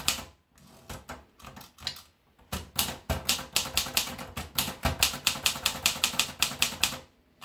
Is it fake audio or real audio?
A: real